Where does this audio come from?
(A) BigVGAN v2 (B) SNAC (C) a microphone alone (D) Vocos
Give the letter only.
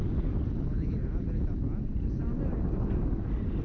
C